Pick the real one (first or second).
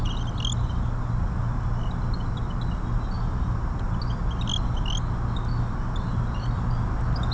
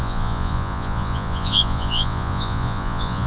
first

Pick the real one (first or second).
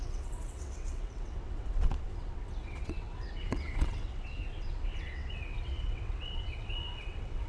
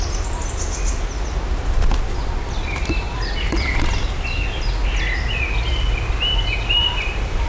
second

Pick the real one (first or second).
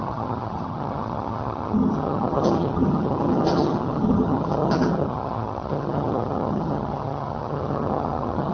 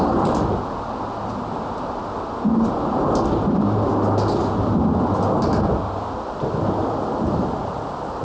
second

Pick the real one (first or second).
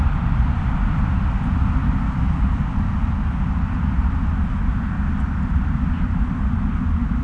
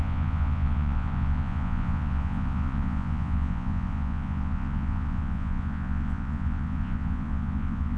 first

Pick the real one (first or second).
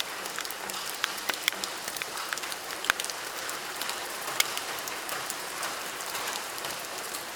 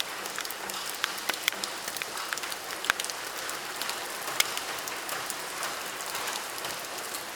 second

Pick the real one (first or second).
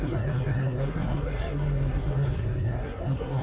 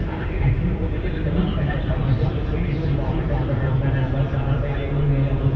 second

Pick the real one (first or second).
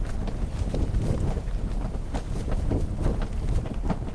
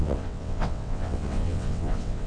first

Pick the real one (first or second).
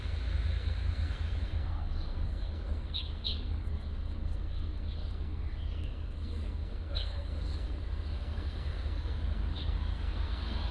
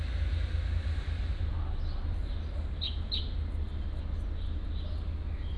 second